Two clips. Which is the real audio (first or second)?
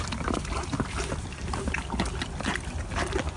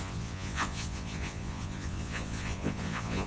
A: first